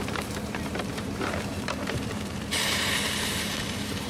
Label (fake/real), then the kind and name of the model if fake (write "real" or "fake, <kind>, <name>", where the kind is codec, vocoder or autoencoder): fake, vocoder, BigVGAN v2